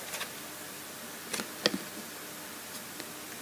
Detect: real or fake real